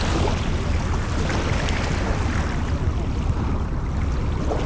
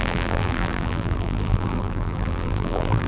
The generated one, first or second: second